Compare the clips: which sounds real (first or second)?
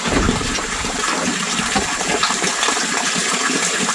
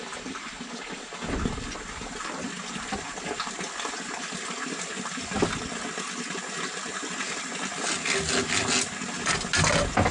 second